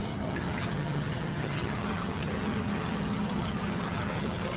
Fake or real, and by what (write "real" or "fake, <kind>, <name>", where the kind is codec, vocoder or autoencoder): fake, vocoder, HiFi-GAN